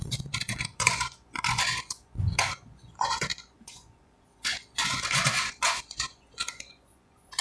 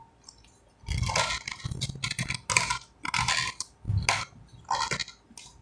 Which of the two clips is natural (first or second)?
second